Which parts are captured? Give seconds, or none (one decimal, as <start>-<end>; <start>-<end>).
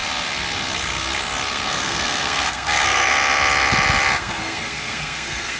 0.0-1.5; 3.1-4.2